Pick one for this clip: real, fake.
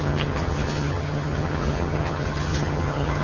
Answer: fake